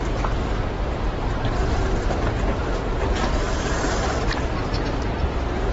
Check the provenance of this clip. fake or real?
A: real